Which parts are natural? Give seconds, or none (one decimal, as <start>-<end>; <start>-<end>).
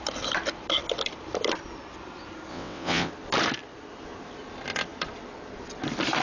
0.0-2.5; 3.1-6.2